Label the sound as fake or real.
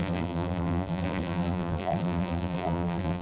fake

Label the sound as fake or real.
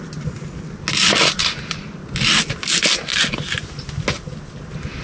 real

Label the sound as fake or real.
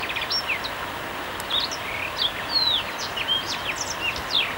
real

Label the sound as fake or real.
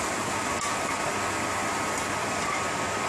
fake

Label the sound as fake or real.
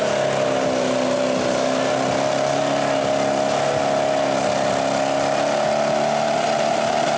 real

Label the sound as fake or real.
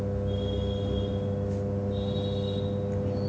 real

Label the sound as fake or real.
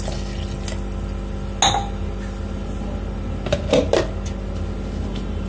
real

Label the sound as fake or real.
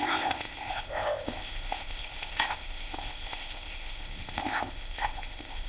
fake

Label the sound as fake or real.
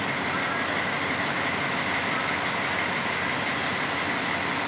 real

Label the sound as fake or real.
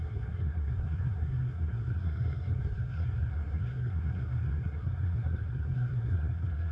fake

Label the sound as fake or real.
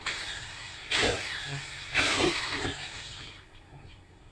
fake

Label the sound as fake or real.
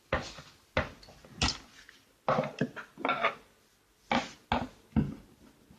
real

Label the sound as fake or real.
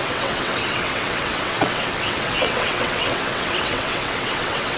fake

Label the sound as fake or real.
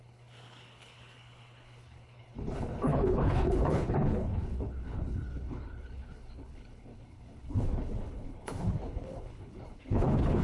fake